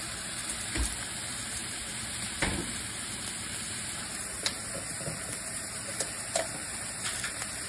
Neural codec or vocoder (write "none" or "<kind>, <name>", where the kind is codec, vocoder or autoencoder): vocoder, BigVGAN v2